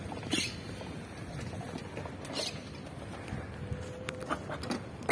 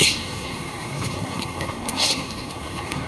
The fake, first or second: second